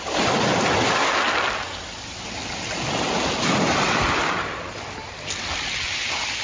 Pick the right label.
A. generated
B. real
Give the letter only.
B